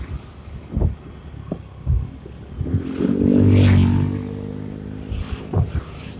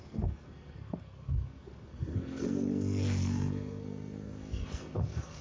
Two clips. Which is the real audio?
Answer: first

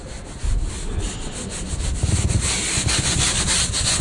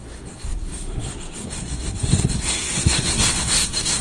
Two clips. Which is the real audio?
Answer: first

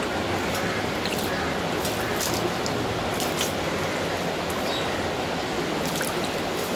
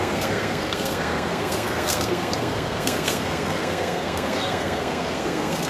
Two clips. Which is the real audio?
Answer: first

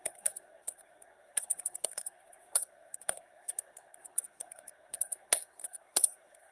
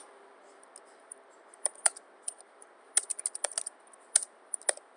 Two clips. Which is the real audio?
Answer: second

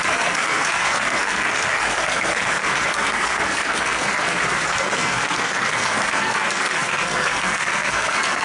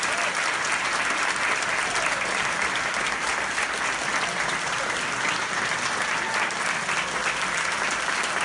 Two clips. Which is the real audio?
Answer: second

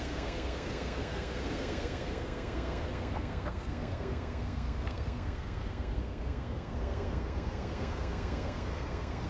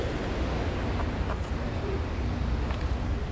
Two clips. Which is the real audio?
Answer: second